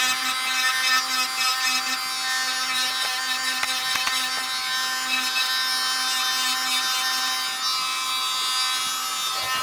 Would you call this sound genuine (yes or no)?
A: yes